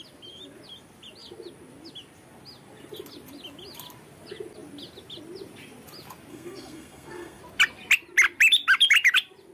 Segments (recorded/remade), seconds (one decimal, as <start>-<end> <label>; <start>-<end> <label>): 0.0-6.3 recorded; 6.3-7.4 remade; 7.4-9.5 recorded